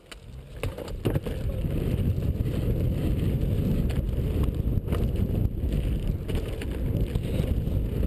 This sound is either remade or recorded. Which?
recorded